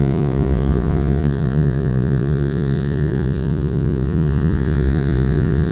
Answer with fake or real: fake